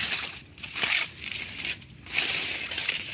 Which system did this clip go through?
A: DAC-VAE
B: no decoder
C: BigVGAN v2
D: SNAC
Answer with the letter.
B